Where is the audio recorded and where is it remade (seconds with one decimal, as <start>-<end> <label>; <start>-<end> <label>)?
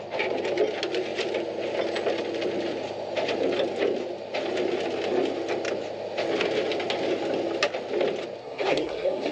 0.0-8.4 recorded; 8.4-9.3 remade